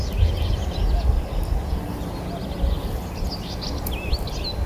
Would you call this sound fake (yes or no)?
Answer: no